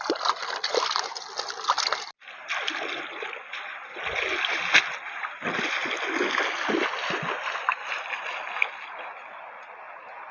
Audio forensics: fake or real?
real